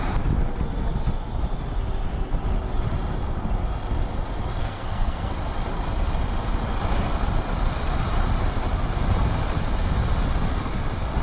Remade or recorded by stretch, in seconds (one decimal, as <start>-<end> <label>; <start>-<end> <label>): 0.0-4.6 recorded; 4.6-5.3 remade; 5.3-11.2 recorded